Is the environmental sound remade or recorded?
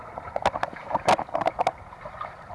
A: recorded